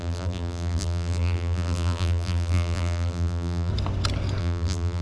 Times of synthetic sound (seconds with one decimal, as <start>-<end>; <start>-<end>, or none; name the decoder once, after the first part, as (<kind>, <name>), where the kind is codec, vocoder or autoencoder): 0.0-3.7 (vocoder, BigVGAN v2); 4.4-5.0